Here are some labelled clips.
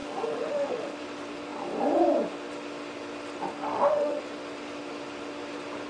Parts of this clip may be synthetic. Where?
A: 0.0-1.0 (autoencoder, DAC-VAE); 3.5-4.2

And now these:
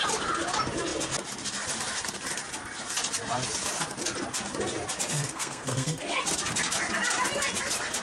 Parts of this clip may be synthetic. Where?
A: 5.1-6.2 (codec, SNAC)

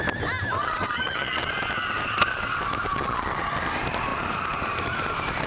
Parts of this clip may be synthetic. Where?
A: 0.6-1.5 (vocoder, Vocos); 2.9-3.4

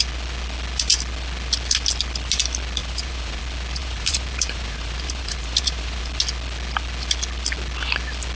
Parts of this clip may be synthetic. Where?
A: 2.8-3.4 (vocoder, BigVGAN v2); 3.8-6.0

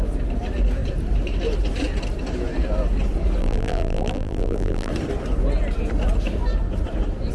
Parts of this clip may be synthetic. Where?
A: 3.4-4.9 (vocoder, BigVGAN v2)

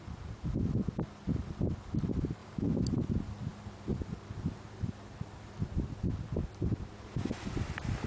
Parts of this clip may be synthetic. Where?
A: 2.4-3.0 (vocoder, BigVGAN v2); 3.5-4.0; 6.4-8.1

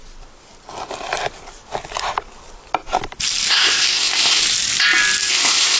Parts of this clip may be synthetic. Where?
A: 3.5-4.4 (codec, ZipCodec); 5.3-5.8

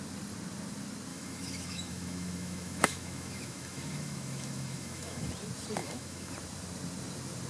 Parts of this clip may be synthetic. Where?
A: 1.1-5.3 (autoencoder, DAC-VAE); 5.8-6.3